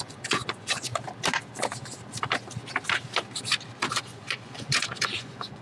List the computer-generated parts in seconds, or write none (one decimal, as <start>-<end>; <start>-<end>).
0.0-0.9; 3.9-5.6